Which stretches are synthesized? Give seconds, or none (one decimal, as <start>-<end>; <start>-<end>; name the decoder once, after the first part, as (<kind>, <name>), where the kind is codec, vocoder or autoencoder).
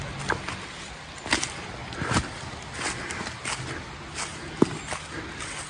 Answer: 1.8-2.4 (vocoder, BigVGAN v2)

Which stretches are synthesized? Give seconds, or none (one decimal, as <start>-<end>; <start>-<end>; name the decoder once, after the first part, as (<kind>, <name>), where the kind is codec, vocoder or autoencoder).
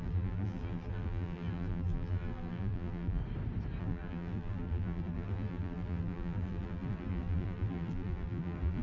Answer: 0.0-3.2 (vocoder, BigVGAN v2); 3.8-8.8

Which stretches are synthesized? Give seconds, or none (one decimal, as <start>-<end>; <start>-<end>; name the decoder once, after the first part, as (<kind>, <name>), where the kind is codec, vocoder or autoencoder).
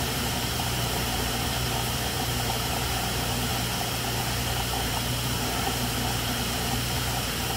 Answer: 0.0-3.5 (vocoder, BigVGAN v2); 4.2-7.6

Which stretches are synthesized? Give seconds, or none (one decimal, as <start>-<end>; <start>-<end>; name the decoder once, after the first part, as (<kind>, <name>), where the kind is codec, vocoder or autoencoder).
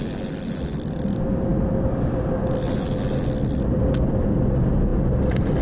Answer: none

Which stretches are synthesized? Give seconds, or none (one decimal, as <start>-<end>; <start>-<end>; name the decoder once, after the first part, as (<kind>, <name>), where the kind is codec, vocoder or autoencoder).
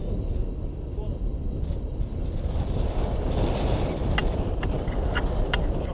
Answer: 1.0-2.6 (vocoder, BigVGAN v2); 4.2-5.9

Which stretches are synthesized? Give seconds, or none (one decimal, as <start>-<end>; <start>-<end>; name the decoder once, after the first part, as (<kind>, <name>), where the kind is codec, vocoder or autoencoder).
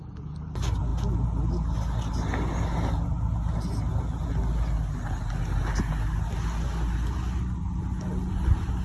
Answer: none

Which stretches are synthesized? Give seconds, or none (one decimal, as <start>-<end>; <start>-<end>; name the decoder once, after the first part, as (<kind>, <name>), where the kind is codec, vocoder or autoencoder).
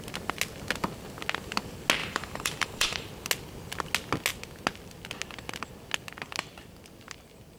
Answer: 2.0-3.1 (vocoder, BigVGAN v2)